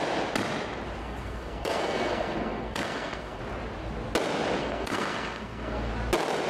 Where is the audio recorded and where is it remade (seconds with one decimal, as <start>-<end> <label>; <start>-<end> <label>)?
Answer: 0.0-1.0 recorded; 1.0-3.4 remade; 3.4-4.6 recorded; 4.6-5.9 remade; 5.9-6.5 recorded